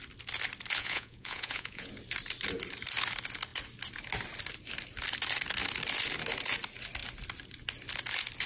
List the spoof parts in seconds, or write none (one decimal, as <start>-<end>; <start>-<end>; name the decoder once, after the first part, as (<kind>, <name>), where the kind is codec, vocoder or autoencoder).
0.8-1.9 (vocoder, Vocos)